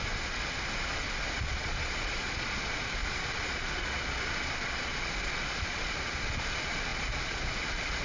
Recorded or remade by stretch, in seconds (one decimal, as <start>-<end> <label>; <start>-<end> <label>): 0.0-1.2 recorded; 1.2-8.0 remade